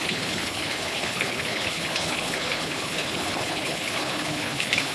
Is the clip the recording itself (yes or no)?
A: no